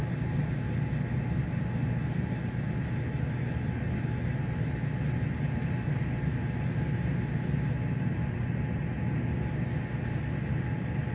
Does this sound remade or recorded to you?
recorded